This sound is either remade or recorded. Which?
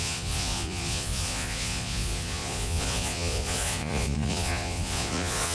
remade